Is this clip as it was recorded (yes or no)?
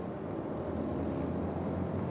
yes